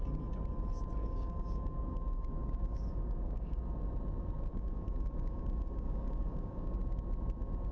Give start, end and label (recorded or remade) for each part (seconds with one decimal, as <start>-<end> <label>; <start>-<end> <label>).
0.0-1.0 recorded; 1.0-3.6 remade; 3.6-4.5 recorded; 4.5-6.8 remade; 6.8-7.7 recorded